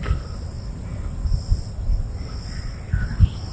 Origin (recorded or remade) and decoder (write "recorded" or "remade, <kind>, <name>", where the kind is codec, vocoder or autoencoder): recorded